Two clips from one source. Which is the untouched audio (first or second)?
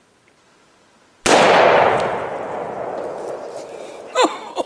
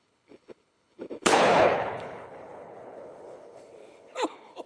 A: first